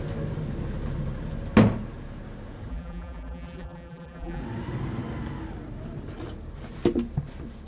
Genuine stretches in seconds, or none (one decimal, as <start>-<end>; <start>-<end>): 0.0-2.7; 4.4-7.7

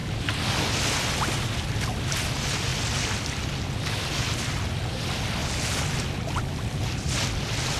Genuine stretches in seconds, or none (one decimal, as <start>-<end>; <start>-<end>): 0.0-7.8

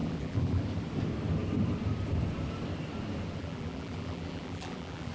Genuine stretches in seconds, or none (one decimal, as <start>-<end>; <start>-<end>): 0.6-3.4

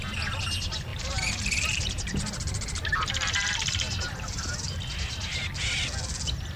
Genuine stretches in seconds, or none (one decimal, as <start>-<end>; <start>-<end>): 0.0-0.9; 4.9-6.6

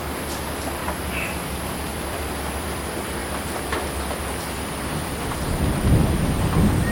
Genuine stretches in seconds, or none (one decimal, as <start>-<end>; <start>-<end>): 0.0-0.8; 2.4-6.9